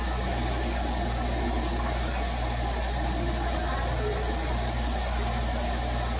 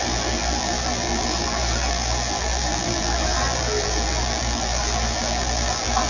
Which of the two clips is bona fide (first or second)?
first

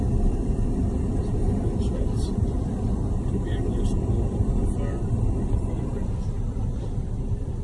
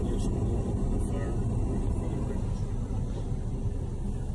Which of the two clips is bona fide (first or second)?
second